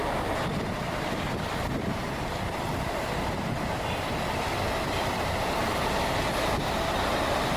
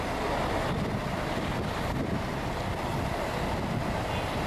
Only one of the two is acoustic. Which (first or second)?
second